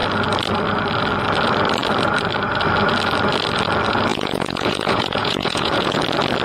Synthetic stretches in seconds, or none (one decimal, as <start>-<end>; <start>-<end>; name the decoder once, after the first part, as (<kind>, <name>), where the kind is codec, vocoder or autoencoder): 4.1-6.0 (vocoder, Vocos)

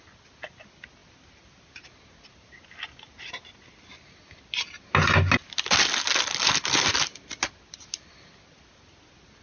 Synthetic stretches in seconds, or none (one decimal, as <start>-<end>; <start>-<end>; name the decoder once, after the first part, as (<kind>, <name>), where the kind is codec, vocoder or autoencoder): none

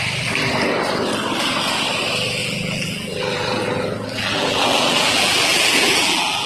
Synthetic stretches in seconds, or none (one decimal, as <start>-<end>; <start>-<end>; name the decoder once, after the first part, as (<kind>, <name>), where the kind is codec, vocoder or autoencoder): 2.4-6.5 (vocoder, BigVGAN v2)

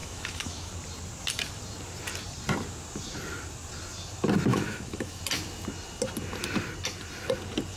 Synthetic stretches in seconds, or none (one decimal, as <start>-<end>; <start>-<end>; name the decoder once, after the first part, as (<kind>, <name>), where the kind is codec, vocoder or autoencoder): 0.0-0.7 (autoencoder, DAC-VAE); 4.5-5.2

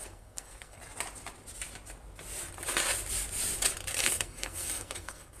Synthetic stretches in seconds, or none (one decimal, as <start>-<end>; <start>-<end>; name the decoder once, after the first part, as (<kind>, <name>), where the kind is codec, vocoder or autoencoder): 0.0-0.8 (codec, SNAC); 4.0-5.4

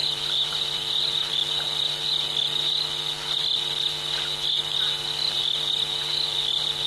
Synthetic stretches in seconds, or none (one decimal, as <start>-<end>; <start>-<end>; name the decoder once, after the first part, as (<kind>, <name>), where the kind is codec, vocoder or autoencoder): 0.0-1.3 (vocoder, BigVGAN v2)

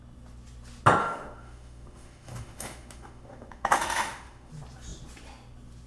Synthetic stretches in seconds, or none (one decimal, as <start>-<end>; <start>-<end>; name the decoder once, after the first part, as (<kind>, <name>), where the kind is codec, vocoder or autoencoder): 1.0-4.5 (autoencoder, DAC-VAE)